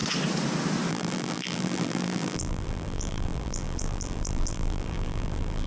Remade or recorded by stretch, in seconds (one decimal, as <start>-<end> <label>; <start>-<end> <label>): 0.0-0.9 recorded; 0.9-5.7 remade